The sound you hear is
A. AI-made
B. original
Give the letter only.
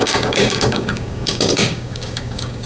A